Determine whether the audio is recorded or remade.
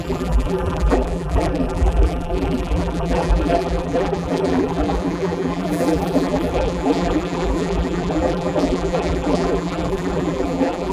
remade